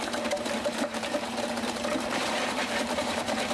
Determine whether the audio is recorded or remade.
remade